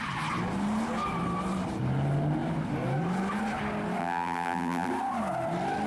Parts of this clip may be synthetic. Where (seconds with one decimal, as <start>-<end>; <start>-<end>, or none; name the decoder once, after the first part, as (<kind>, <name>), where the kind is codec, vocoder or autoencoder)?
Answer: 4.0-4.9 (vocoder, BigVGAN v2)